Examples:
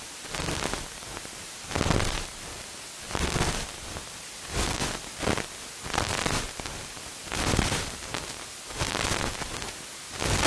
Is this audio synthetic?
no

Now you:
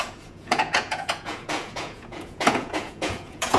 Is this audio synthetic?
yes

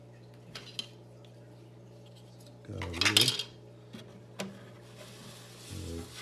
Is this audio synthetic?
no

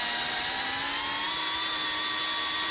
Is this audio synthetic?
no